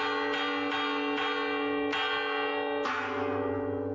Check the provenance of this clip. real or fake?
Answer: real